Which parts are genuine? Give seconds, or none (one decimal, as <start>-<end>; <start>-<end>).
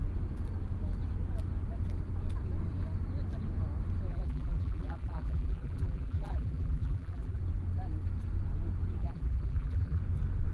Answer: 0.0-4.1; 7.4-9.0; 10.0-10.5